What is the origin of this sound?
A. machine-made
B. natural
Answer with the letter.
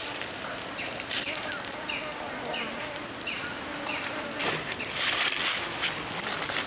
A